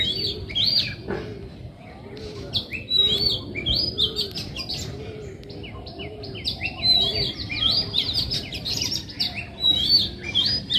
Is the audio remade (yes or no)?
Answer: no